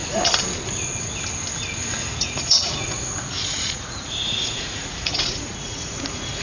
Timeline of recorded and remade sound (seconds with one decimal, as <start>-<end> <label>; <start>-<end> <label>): 0.0-2.0 recorded; 2.0-6.4 remade